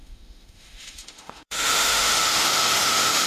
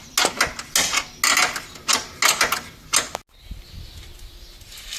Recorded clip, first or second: second